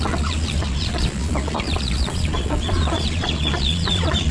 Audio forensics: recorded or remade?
remade